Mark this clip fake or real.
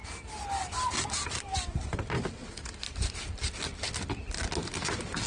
real